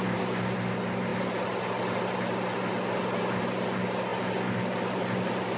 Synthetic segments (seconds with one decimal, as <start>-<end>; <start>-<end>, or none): none

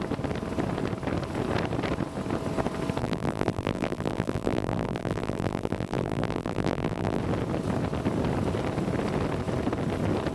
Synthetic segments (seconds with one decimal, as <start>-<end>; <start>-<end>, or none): 3.0-7.2

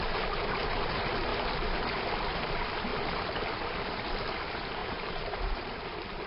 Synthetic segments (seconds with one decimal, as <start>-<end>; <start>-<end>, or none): 4.8-5.8

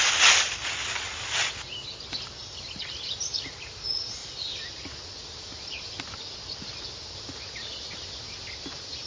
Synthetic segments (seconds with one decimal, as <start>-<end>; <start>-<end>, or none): 2.4-3.8

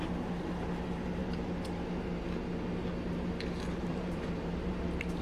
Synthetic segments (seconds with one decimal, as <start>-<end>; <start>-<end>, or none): 3.9-4.8

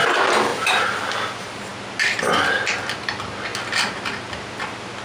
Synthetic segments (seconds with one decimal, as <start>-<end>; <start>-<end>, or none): 0.5-1.0